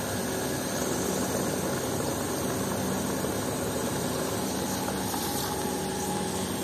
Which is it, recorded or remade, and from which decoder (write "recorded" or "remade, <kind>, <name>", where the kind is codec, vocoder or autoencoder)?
recorded